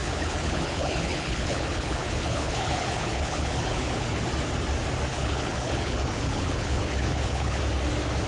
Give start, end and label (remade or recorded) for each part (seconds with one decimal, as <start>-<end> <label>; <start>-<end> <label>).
0.0-4.2 remade; 4.2-5.1 recorded; 5.1-7.6 remade; 7.6-8.3 recorded